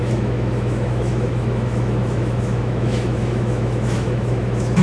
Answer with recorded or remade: remade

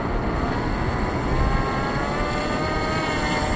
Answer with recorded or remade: recorded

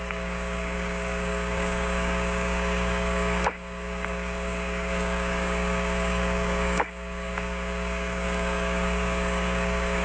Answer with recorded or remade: remade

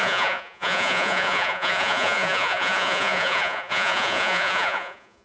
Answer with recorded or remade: remade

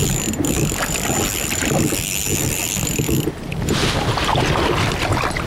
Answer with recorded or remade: recorded